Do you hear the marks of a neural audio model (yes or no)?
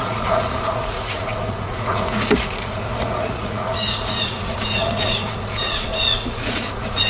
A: yes